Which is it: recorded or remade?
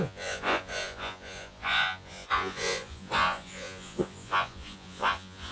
remade